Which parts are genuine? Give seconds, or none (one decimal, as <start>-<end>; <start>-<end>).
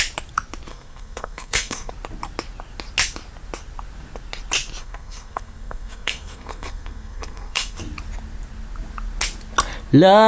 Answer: 0.0-0.7; 1.9-4.8; 7.8-10.3